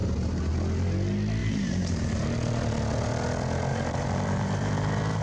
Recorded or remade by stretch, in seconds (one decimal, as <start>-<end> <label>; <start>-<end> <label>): 0.0-0.5 remade; 0.5-1.4 recorded; 1.4-2.6 remade; 2.6-3.7 recorded; 3.7-4.7 remade; 4.7-5.2 recorded